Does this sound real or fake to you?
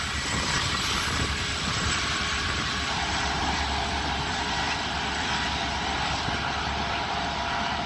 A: fake